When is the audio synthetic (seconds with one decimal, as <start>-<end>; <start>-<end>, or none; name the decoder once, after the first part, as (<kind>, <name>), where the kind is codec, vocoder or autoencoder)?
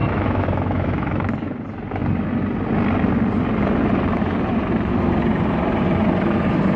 0.0-1.3 (autoencoder, DAC-VAE)